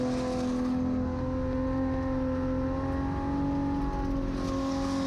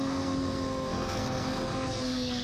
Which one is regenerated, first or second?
second